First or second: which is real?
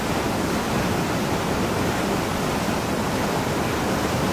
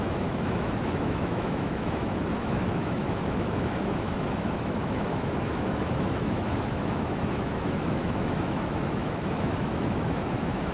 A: first